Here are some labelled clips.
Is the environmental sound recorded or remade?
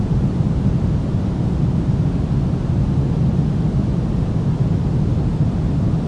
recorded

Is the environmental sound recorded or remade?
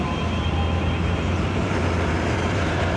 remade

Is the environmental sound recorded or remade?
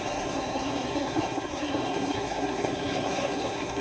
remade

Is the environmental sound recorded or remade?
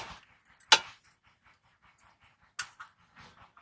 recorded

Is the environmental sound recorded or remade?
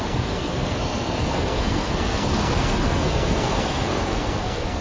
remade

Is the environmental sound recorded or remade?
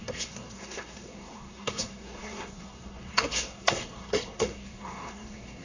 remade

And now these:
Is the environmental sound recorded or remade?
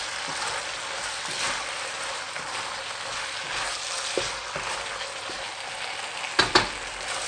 recorded